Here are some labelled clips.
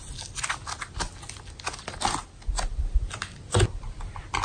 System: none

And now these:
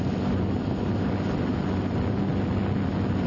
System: none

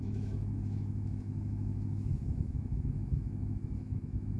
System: autoencoder, DAC-VAE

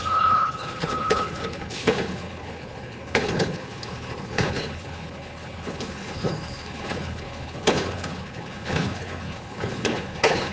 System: codec, HILCodec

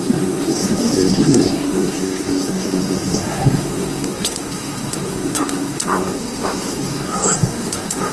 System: codec, SNAC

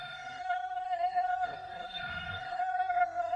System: codec, SNAC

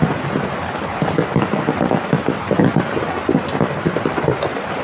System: none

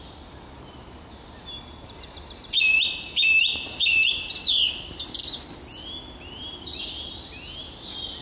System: none